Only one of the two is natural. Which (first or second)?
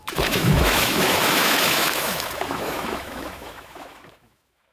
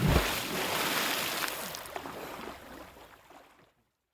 second